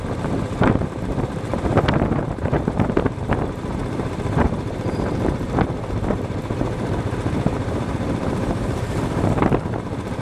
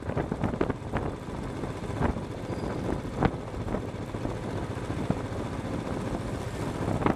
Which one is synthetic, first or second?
first